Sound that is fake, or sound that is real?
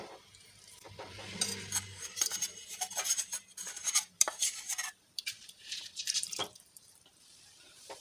fake